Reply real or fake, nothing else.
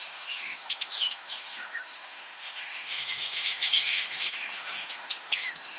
fake